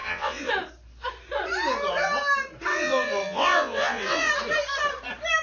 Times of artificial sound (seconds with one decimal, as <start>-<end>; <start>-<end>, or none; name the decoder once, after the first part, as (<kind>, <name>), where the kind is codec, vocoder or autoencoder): 0.0-0.5 (vocoder, WaveNeXt); 2.7-4.3